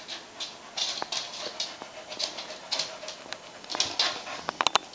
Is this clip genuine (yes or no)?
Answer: yes